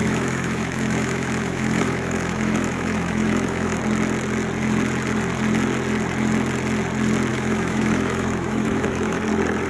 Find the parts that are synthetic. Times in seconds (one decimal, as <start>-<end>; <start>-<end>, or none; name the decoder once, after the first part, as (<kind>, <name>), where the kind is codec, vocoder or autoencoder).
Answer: 0.0-3.8 (autoencoder, DAC-VAE); 7.3-9.2